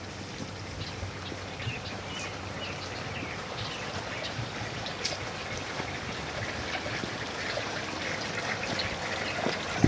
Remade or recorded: recorded